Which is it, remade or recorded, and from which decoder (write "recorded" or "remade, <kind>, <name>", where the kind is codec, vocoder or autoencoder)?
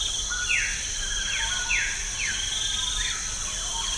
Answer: recorded